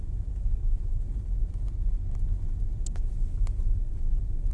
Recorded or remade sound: recorded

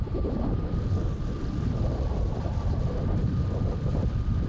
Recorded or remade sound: recorded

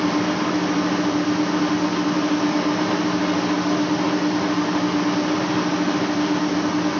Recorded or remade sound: recorded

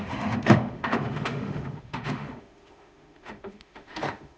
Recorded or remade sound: remade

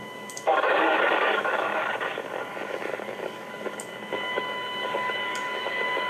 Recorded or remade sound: remade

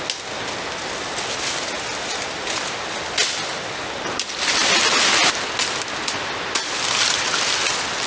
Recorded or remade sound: recorded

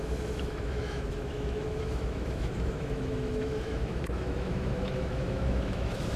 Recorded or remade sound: remade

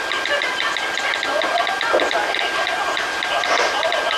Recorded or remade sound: recorded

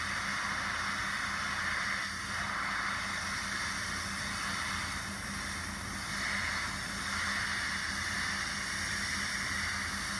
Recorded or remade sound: recorded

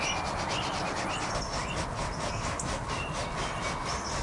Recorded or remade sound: recorded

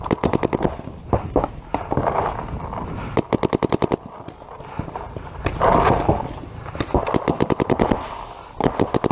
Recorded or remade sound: recorded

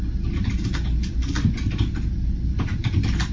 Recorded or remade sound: recorded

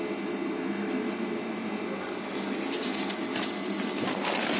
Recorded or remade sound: recorded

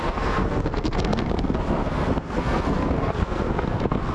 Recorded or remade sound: remade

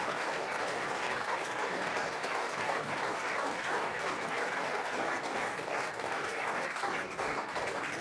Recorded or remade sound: remade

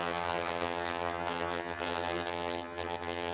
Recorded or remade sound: remade